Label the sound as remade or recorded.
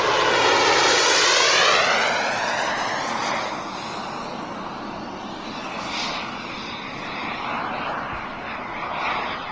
recorded